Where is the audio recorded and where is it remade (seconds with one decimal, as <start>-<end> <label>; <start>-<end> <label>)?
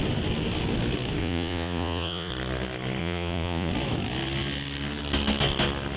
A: 0.0-1.2 recorded; 1.2-2.3 remade; 2.3-3.0 recorded; 3.0-3.7 remade; 3.7-6.0 recorded